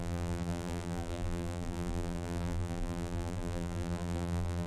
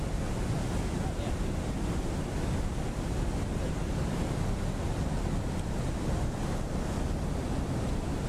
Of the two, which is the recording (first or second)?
second